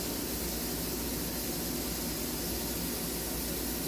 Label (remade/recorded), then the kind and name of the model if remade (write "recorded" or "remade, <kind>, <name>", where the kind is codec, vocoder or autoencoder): recorded